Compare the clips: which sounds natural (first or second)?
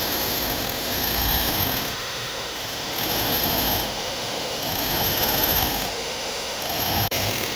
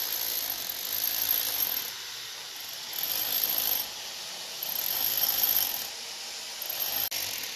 second